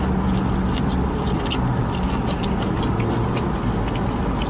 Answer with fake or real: real